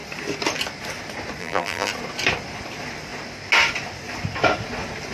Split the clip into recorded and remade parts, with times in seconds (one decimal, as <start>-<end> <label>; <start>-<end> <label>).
0.0-1.4 recorded; 1.4-1.9 remade; 1.9-5.1 recorded